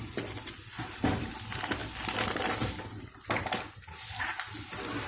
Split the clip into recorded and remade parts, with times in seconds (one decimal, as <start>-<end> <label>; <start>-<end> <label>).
0.0-5.1 recorded